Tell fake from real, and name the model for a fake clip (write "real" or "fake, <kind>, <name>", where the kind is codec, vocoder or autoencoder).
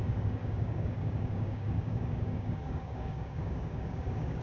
fake, codec, DAC